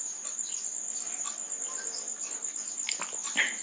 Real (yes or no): yes